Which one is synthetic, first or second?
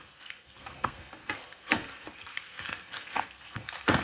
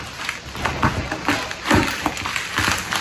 first